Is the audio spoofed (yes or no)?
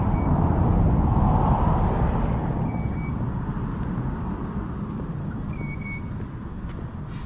no